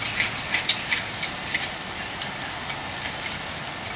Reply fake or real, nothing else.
real